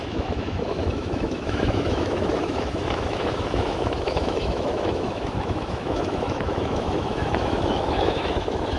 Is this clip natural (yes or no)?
no